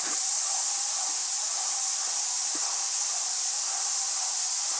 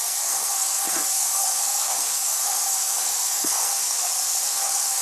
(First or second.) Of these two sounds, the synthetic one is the second